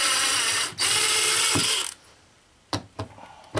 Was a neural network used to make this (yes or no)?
no